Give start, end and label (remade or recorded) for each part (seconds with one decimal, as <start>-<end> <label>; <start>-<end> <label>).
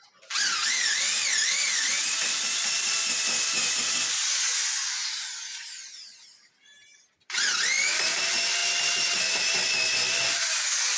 0.0-1.4 recorded; 1.4-2.7 remade; 2.7-11.0 recorded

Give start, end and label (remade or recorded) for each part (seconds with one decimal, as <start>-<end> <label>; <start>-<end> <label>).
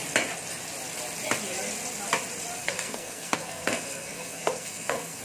0.0-2.6 recorded; 2.6-5.2 remade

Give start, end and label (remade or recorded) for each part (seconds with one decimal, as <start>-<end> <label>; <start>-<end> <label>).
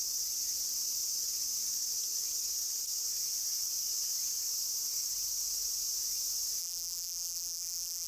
0.0-6.6 recorded; 6.6-8.1 remade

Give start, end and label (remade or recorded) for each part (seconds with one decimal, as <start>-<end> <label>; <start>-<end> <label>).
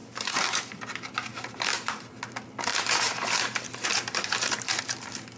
0.0-0.8 remade; 0.8-1.3 recorded; 1.3-2.1 remade; 2.1-2.7 recorded; 2.7-4.8 remade; 4.8-5.4 recorded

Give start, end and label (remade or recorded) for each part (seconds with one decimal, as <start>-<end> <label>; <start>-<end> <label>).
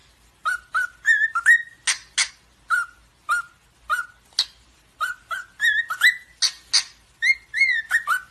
0.0-8.3 recorded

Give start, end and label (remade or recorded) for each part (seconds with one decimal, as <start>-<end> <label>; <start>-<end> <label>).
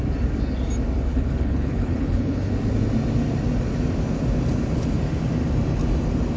0.0-1.1 recorded; 1.1-2.5 remade; 2.5-6.4 recorded